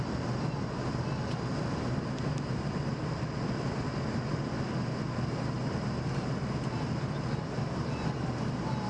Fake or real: real